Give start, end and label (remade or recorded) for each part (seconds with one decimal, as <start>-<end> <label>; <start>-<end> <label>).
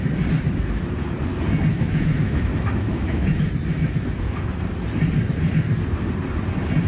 0.0-1.7 recorded; 1.7-3.5 remade; 3.5-6.9 recorded